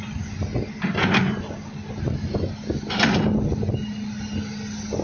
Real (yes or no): yes